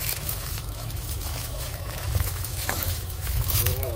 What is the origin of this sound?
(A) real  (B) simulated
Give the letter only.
B